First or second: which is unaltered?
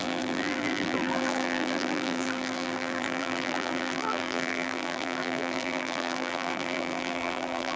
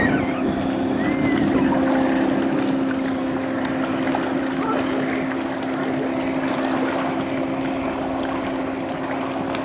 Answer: second